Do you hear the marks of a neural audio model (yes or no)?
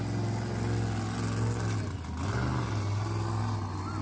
no